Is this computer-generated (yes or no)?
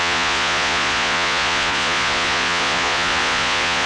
yes